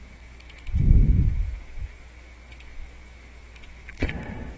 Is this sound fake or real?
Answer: fake